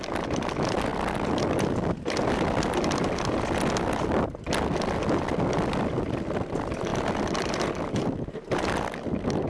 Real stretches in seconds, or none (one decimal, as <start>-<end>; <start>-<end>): 0.0-9.5